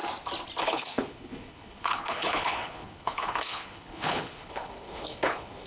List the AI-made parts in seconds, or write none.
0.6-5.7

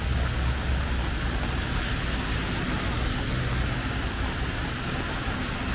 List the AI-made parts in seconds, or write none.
none

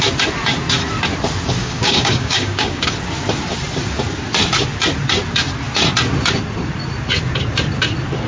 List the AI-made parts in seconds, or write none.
1.6-2.9

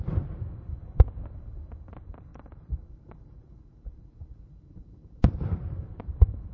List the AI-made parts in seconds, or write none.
2.3-6.5